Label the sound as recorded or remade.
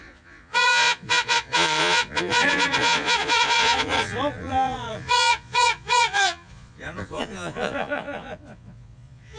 remade